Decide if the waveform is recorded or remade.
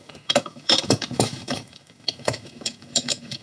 remade